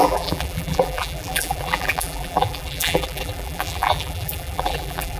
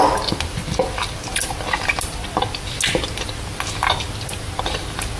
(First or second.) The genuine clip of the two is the second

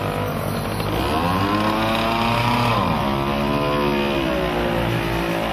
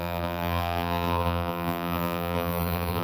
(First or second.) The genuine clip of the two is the first